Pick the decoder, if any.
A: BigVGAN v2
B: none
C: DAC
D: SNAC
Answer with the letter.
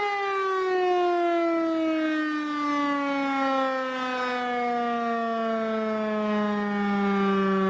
B